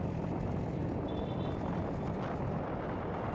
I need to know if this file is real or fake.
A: real